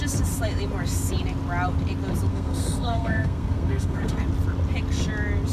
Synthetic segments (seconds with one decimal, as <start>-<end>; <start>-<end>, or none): 2.3-4.2